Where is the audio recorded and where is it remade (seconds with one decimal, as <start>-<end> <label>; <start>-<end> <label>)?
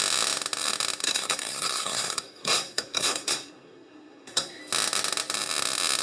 0.0-1.0 recorded; 1.0-4.6 remade; 4.6-6.0 recorded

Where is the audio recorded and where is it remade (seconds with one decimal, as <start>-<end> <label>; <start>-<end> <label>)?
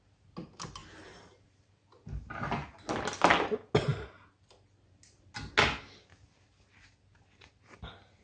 0.0-0.8 recorded; 0.8-2.3 remade; 2.3-8.2 recorded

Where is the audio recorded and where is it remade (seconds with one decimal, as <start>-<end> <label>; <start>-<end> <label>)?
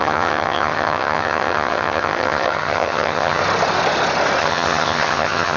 0.0-3.4 remade; 3.4-4.4 recorded; 4.4-5.6 remade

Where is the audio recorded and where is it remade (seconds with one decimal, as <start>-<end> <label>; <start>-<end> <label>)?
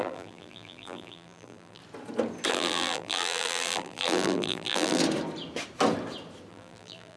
0.0-1.8 remade; 1.8-2.5 recorded; 2.5-5.0 remade; 5.0-6.5 recorded; 6.5-7.2 remade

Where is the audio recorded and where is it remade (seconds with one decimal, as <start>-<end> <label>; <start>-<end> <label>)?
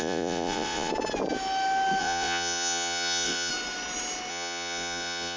0.0-0.9 remade; 0.9-2.0 recorded; 2.0-3.5 remade; 3.5-4.3 recorded; 4.3-5.4 remade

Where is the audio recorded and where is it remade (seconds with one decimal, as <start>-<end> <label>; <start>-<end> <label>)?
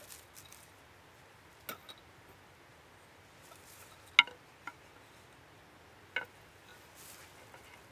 0.0-7.9 recorded